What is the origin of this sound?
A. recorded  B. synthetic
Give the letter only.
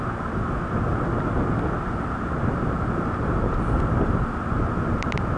A